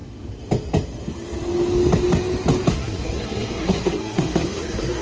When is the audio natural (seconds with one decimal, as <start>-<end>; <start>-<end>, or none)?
0.0-2.7

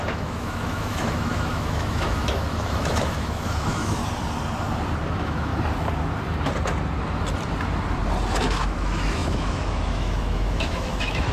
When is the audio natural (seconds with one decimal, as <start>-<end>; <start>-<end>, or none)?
4.0-5.1; 5.5-8.4

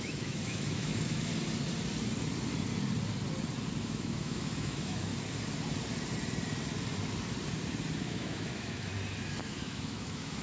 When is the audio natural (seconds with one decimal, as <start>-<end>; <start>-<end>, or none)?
1.3-3.8; 5.1-8.0; 8.9-9.4

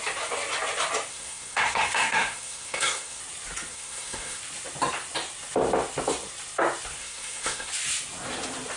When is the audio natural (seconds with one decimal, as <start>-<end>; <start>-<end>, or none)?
0.0-1.1; 3.2-3.7; 4.4-7.0; 7.7-8.8

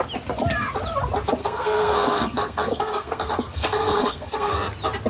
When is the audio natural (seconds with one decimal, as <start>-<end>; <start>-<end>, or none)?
0.0-1.4; 4.5-5.1